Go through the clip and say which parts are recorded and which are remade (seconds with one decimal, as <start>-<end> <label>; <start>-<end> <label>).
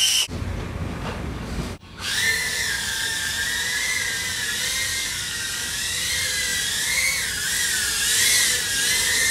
0.0-0.8 recorded; 0.8-3.3 remade; 3.3-4.9 recorded; 4.9-6.0 remade; 6.0-9.3 recorded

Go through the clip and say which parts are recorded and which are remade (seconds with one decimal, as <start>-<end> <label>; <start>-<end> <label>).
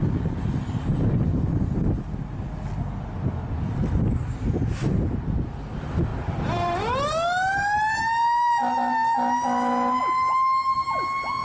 0.0-11.4 recorded